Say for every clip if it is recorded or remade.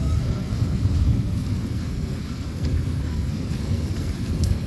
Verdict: remade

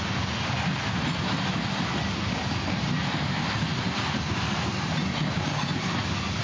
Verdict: recorded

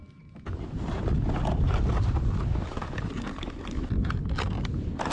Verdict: recorded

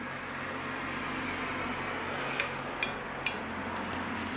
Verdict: recorded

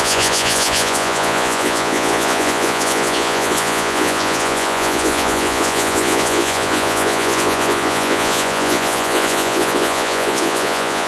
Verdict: remade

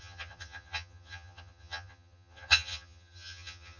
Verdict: remade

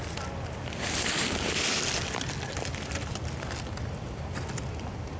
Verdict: recorded